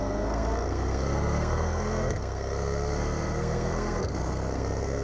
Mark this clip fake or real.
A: fake